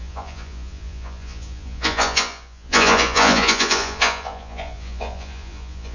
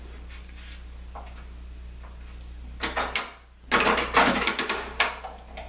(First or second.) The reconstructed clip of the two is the first